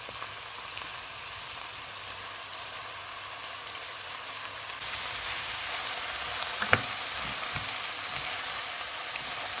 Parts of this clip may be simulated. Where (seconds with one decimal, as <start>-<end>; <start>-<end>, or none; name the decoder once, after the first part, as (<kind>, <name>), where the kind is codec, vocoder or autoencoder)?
2.5-4.5 (vocoder, BigVGAN v2)